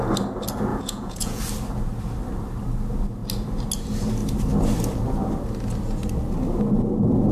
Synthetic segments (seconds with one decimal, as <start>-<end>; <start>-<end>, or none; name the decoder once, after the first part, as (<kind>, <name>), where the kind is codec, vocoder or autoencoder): 0.7-1.4 (vocoder, Vocos)

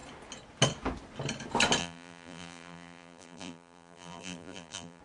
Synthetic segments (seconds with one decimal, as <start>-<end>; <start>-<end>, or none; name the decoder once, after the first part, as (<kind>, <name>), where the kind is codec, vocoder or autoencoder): 1.8-5.0 (vocoder, BigVGAN v2)